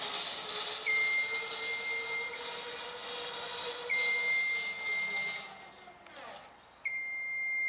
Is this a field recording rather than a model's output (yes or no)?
yes